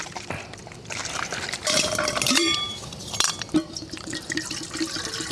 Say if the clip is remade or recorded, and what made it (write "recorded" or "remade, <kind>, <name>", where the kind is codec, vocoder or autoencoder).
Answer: remade, vocoder, BigVGAN v2